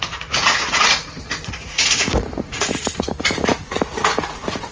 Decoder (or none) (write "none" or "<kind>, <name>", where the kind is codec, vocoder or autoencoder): vocoder, Vocos